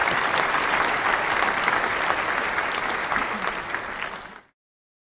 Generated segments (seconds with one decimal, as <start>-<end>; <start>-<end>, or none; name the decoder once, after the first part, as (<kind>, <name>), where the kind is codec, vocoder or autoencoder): 0.0-2.7 (vocoder, BigVGAN v2)